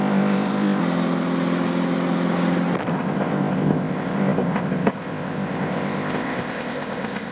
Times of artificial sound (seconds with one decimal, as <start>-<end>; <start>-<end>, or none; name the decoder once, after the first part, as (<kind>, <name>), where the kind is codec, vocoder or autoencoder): 0.0-0.8 (codec, ZipCodec); 2.9-7.3